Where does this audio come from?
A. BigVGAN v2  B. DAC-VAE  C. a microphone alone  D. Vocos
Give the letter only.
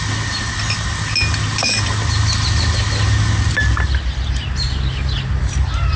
C